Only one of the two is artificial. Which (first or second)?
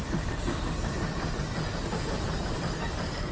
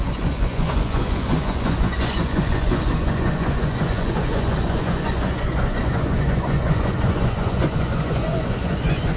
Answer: second